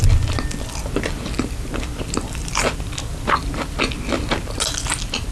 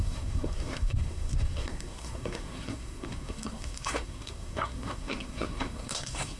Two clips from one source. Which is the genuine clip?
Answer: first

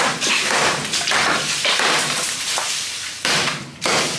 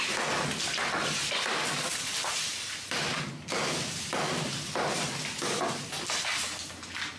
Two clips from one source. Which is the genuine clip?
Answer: second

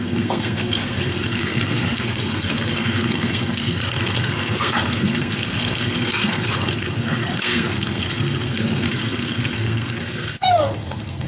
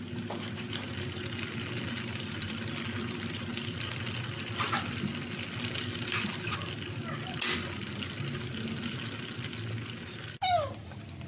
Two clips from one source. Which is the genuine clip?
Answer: second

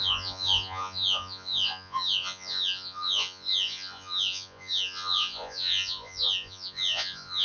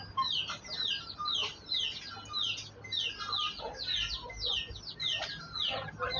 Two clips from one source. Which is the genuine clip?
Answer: second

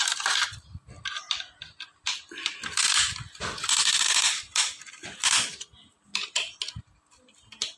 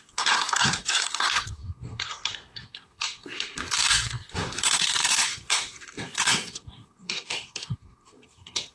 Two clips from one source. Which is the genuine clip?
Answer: first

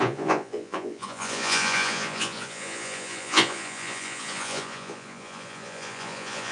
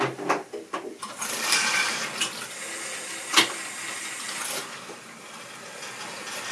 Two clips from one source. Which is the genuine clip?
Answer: second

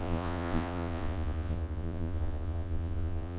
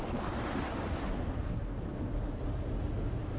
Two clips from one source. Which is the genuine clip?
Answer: second